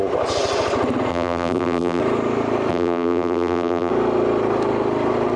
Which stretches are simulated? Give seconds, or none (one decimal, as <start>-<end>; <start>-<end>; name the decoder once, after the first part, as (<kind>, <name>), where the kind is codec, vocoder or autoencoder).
1.1-2.0 (vocoder, BigVGAN v2); 2.7-3.9